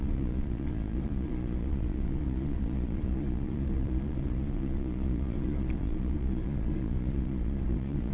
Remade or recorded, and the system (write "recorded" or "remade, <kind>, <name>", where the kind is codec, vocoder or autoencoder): remade, vocoder, Vocos